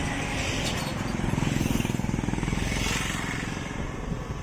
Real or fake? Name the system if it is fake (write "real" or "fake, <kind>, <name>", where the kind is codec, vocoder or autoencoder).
real